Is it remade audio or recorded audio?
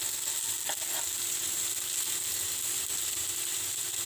recorded